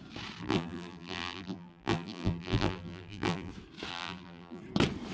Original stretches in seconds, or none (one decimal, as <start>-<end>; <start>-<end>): 0.0-0.4; 3.5-3.9; 4.6-5.1